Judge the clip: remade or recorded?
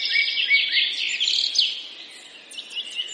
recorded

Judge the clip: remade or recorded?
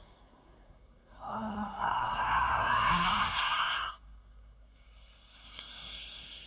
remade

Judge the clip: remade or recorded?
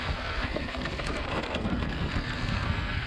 remade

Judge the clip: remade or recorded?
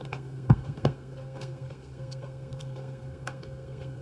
remade